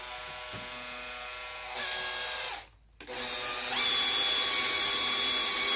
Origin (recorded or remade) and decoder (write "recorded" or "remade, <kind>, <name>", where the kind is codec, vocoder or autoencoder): recorded